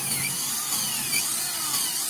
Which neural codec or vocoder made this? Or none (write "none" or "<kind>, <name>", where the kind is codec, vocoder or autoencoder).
none